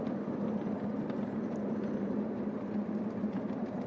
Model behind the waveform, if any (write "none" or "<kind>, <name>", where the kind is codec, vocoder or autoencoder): vocoder, BigVGAN v2